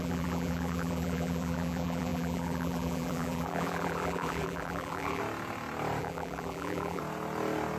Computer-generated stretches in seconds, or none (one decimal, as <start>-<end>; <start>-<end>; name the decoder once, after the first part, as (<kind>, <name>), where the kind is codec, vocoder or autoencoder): 0.0-5.2 (vocoder, BigVGAN v2); 6.0-7.0